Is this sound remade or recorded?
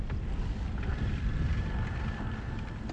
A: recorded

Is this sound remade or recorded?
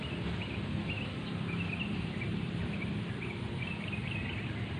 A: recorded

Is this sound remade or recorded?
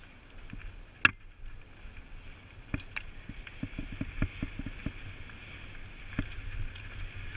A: recorded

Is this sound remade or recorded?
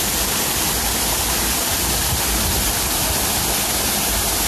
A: remade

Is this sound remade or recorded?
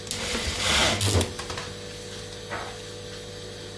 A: recorded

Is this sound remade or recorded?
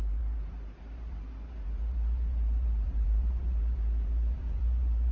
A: remade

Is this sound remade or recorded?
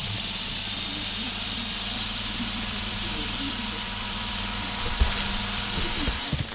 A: remade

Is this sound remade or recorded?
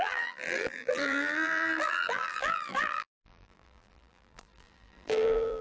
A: remade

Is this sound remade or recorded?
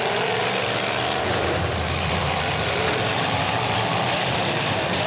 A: remade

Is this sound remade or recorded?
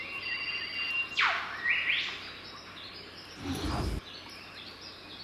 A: recorded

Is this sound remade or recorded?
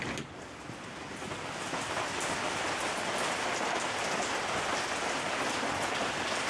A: recorded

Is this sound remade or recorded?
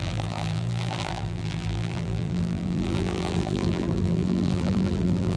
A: remade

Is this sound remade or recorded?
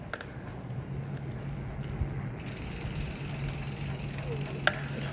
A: recorded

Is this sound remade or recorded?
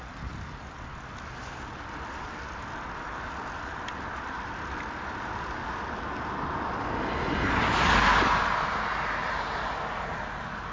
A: recorded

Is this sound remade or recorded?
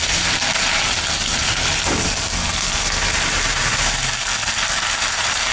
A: recorded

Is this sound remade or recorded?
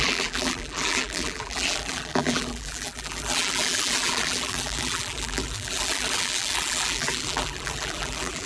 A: remade